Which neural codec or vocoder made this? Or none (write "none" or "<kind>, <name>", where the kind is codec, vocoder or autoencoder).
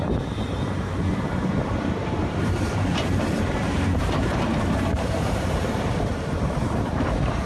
vocoder, BigVGAN v2